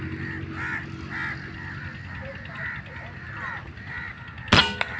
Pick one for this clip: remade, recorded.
recorded